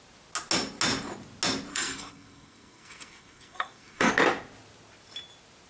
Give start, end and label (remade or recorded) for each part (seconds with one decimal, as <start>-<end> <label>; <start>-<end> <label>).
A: 0.0-1.7 recorded; 1.7-4.1 remade; 4.1-5.7 recorded